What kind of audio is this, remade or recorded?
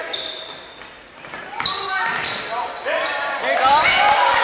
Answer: recorded